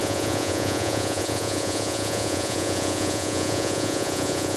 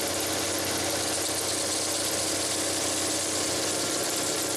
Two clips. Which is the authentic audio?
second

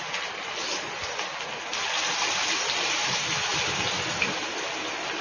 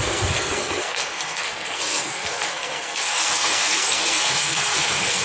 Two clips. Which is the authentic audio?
first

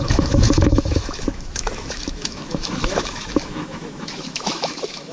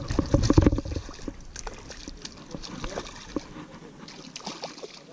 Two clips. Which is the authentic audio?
second